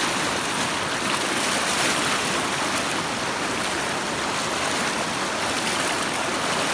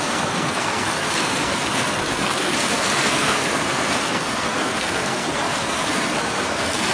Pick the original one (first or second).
first